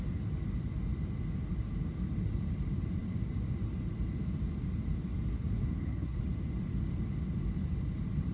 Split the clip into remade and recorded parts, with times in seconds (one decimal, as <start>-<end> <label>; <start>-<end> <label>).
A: 0.0-5.3 recorded; 5.3-6.2 remade; 6.2-8.3 recorded